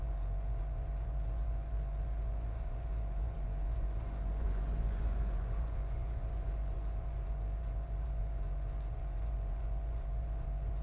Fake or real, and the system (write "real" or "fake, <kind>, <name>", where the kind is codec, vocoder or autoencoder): fake, vocoder, Vocos